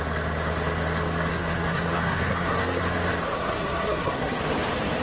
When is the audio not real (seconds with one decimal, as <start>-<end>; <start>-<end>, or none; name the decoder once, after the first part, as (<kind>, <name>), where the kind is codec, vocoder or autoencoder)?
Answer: 1.3-2.8 (codec, SNAC); 3.4-4.4